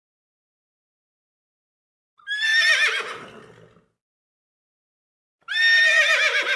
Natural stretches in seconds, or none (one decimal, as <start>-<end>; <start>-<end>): 0.0-6.6